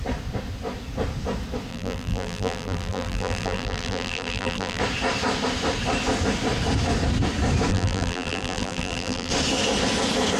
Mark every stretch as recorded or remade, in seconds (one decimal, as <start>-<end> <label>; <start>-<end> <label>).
0.0-1.7 recorded; 1.7-4.8 remade; 4.8-7.7 recorded; 7.7-9.3 remade; 9.3-10.4 recorded